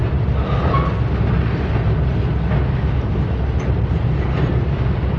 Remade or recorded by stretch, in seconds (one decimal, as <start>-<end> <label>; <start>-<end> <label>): 0.0-5.2 recorded